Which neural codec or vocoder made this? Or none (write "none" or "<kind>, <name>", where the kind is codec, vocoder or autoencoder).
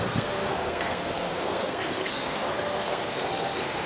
codec, SNAC